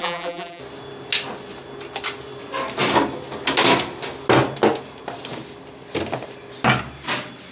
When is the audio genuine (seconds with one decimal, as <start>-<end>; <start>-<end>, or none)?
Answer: 0.6-7.5